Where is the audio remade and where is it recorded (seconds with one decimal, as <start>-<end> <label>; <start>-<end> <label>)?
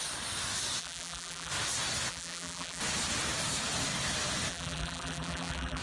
0.0-0.8 recorded; 0.8-1.5 remade; 1.5-2.1 recorded; 2.1-2.8 remade; 2.8-4.5 recorded; 4.5-5.8 remade